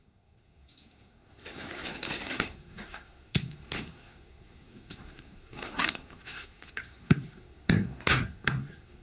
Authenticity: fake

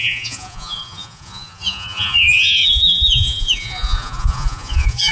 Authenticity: fake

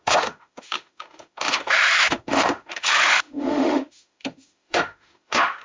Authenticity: fake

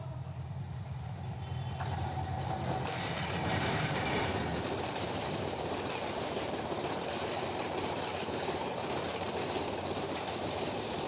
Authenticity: fake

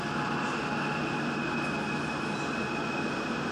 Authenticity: real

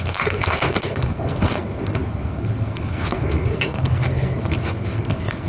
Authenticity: fake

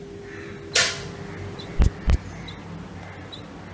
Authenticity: real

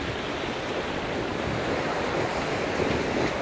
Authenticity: real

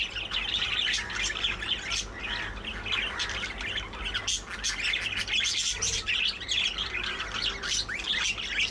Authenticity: real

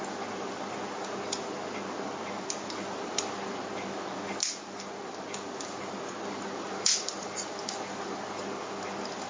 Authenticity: real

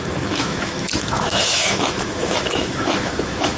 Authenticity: fake